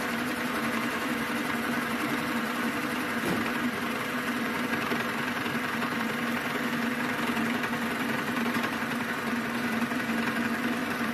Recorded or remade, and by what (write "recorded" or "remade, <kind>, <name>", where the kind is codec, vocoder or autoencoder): remade, vocoder, BigVGAN v2